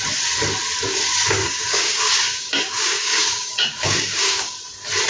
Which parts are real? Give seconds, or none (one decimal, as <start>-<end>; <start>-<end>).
0.0-1.4; 4.5-5.1